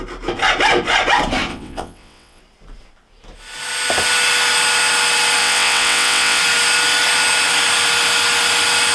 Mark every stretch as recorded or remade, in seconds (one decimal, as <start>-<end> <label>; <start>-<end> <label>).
0.0-1.5 recorded; 1.5-2.4 remade; 2.4-5.4 recorded; 5.4-6.4 remade; 6.4-8.9 recorded